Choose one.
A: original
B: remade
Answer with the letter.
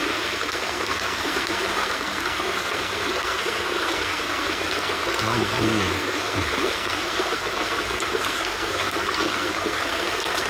B